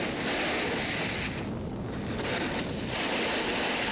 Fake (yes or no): no